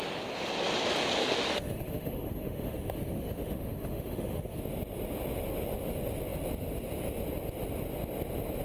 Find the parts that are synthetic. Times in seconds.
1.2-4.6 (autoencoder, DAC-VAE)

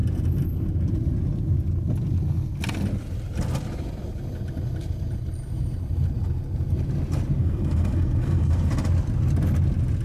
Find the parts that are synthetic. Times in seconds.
7.4-8.7 (codec, SNAC)

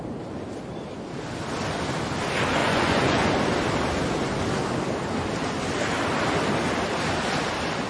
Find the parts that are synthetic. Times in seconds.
2.6-3.3 (vocoder, Vocos)

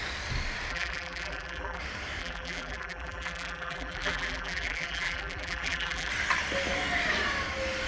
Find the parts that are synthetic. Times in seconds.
0.7-1.8 (vocoder, BigVGAN v2); 2.2-6.1

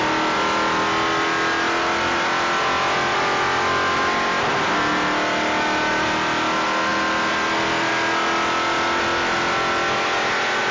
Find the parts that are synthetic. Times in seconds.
none